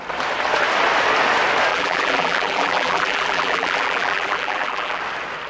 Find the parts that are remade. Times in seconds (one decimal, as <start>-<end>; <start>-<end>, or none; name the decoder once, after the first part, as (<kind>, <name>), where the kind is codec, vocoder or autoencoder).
1.7-5.0 (vocoder, BigVGAN v2)